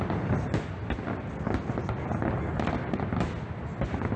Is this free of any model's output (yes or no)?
yes